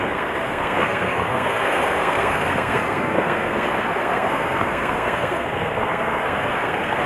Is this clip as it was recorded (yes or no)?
no